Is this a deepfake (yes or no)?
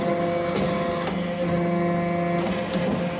no